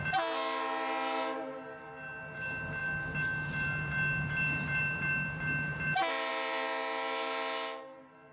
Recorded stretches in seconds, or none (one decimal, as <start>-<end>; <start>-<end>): 0.0-8.3